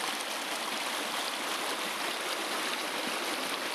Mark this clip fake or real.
real